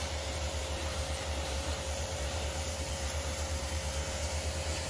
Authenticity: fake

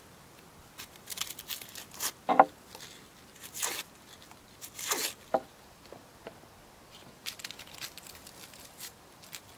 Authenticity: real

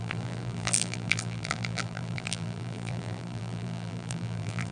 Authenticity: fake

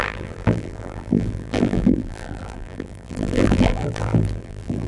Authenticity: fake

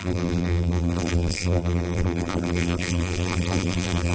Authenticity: fake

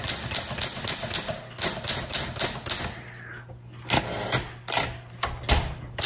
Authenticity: real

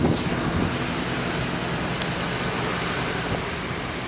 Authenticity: real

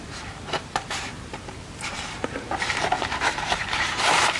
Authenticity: fake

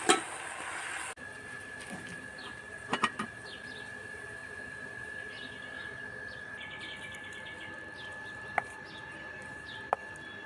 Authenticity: real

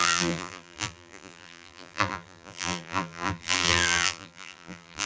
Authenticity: fake